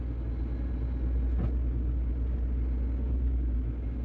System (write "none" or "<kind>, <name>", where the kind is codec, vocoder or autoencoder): none